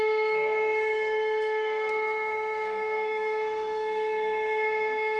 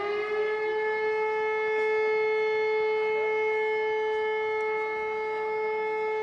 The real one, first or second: second